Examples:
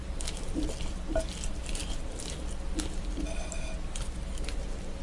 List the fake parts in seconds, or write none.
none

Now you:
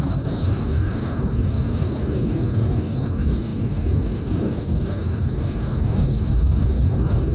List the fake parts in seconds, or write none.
0.0-7.3 (codec, DAC)

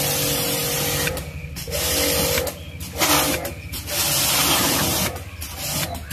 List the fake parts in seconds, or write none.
none

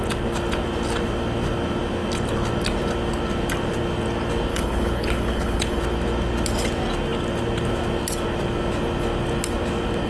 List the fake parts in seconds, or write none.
4.5-5.8 (codec, HILCodec)

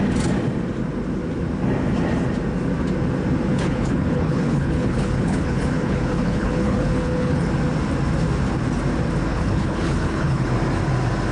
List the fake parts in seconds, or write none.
3.5-7.5 (codec, HILCodec); 9.3-10.5

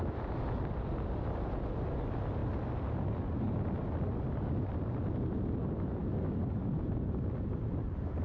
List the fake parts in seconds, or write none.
none